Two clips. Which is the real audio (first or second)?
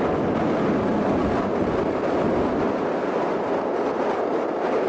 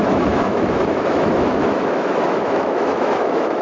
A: first